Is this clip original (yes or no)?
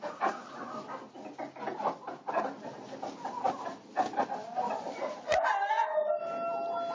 yes